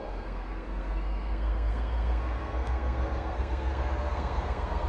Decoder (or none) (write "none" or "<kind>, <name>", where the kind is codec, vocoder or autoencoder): codec, SNAC